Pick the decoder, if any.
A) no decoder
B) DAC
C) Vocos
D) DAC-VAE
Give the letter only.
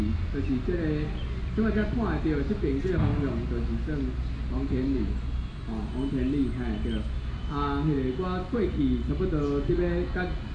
A